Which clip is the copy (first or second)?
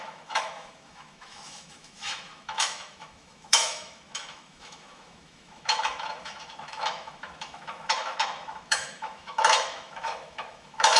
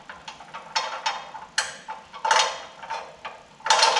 first